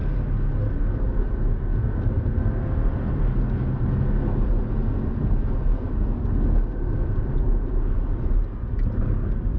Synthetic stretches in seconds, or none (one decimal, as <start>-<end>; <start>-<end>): none